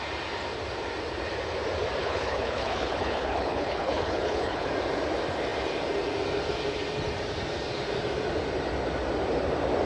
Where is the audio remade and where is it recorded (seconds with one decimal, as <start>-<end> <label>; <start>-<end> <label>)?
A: 0.0-2.0 recorded; 2.0-4.7 remade; 4.7-9.9 recorded